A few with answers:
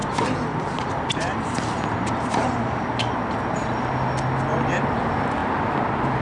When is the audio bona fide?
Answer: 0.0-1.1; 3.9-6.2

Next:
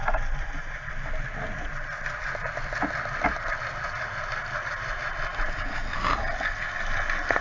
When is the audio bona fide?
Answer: 0.0-7.4